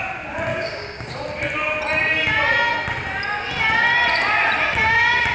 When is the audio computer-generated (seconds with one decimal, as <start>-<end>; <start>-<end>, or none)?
0.5-1.1